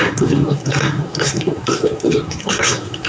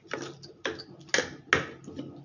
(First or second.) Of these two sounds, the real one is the second